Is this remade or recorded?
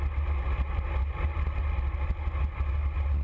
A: recorded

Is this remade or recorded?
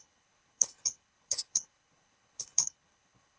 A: remade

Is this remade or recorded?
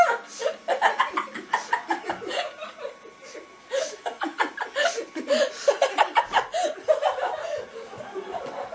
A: recorded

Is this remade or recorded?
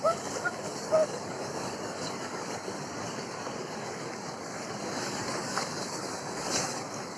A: remade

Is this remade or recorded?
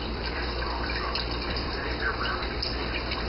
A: remade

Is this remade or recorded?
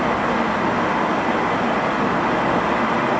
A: recorded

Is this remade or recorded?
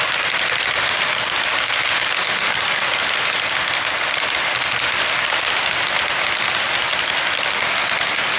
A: recorded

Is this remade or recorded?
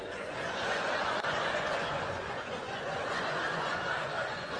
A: remade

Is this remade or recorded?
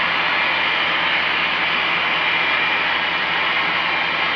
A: recorded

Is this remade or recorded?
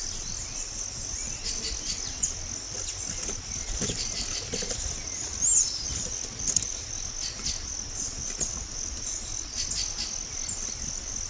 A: recorded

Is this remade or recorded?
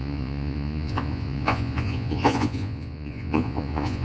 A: remade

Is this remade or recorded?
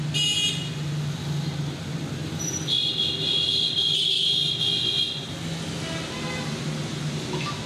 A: recorded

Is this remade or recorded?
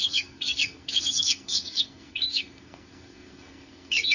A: remade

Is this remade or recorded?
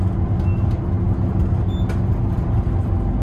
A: recorded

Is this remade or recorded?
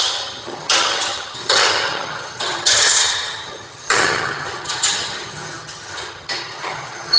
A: remade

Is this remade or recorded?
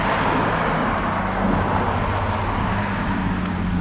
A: recorded